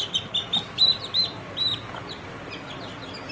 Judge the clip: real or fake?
real